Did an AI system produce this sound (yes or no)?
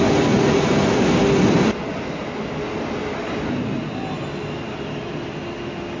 no